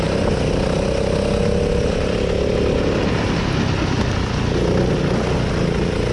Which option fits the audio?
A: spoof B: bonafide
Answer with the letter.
B